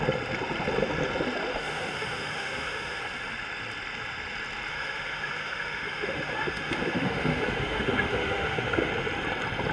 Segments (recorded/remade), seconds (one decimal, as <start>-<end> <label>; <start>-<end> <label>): 0.0-1.5 recorded; 1.5-3.0 remade; 3.0-4.7 recorded; 4.7-8.9 remade; 8.9-9.7 recorded